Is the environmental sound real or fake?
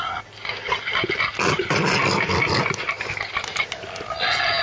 real